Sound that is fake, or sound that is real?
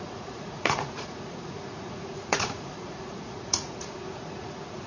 fake